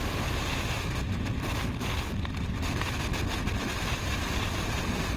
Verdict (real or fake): real